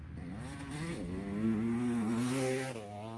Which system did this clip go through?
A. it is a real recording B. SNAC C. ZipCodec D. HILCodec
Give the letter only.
A